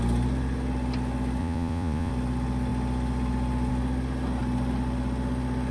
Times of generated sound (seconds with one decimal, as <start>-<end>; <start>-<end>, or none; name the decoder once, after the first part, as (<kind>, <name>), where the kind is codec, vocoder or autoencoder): 1.4-2.1 (vocoder, Vocos)

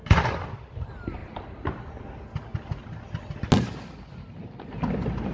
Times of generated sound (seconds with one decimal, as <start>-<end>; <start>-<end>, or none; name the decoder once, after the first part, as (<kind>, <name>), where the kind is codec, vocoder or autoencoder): none